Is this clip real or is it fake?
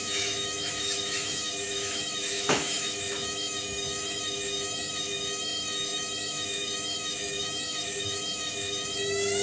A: fake